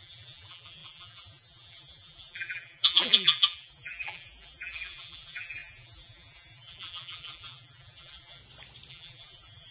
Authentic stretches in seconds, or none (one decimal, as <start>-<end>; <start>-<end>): 8.4-8.9